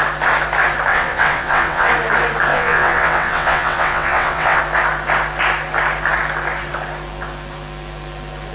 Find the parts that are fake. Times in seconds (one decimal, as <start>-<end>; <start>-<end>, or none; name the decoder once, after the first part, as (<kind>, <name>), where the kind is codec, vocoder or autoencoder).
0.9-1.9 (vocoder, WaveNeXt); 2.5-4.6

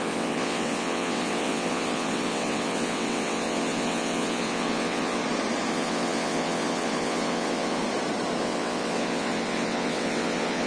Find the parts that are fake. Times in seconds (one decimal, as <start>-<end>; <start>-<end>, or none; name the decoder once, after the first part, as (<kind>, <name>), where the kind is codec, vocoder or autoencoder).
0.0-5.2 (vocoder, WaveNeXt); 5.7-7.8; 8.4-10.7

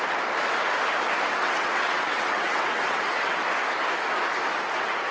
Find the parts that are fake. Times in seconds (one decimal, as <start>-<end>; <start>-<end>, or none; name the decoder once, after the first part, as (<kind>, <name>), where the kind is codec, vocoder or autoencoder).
1.3-3.4 (vocoder, WaveNeXt)

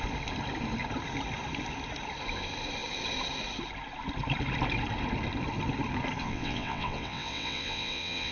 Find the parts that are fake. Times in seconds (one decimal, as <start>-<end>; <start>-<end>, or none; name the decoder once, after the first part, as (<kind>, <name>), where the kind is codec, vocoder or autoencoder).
6.2-8.3 (vocoder, WaveNeXt)